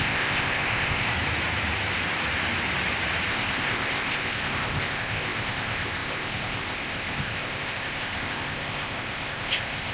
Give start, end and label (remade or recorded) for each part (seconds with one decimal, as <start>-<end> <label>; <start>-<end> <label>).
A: 0.0-1.1 remade; 1.1-3.3 recorded; 3.3-9.9 remade